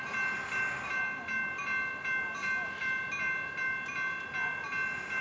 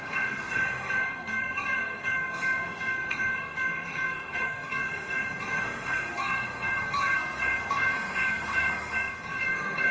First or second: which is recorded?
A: first